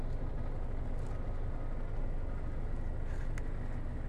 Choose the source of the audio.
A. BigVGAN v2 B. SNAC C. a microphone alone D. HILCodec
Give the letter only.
C